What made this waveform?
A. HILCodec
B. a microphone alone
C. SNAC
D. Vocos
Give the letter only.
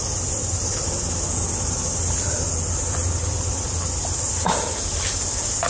B